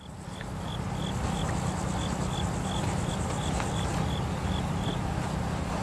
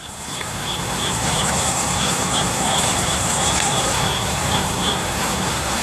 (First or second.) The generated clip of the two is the second